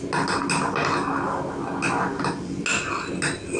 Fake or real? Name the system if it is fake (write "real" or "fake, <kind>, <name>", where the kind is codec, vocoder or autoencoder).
real